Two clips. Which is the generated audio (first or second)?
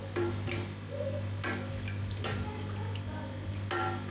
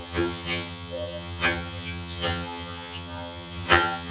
second